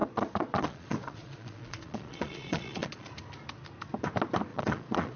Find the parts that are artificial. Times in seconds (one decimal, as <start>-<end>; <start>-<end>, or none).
0.0-3.1; 4.5-5.2